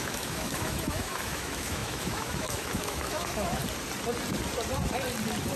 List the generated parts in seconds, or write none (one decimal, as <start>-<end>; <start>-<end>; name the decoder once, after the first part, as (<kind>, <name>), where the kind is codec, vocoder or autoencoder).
0.0-3.6 (autoencoder, DAC-VAE)

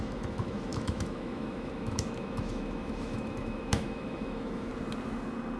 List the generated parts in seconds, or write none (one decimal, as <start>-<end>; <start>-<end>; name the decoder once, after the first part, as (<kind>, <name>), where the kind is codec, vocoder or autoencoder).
0.0-4.7 (autoencoder, DAC-VAE)

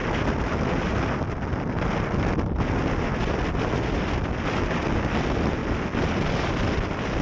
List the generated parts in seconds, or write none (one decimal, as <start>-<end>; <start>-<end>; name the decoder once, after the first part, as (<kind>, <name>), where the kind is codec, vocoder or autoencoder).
none